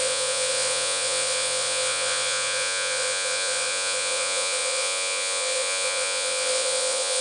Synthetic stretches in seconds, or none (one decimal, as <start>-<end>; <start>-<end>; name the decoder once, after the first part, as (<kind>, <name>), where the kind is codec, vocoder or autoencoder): 0.0-7.2 (vocoder, Vocos)